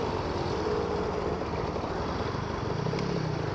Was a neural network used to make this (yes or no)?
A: yes